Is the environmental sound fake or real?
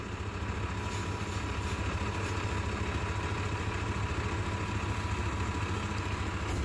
real